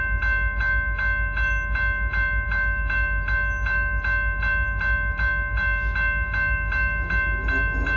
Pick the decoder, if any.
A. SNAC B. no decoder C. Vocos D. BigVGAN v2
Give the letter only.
B